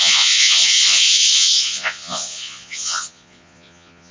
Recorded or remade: remade